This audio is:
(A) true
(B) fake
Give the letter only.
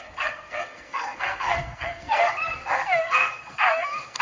B